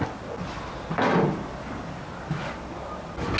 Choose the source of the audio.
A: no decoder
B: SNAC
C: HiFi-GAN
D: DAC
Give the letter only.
A